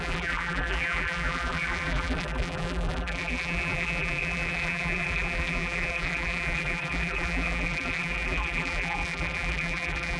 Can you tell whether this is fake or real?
fake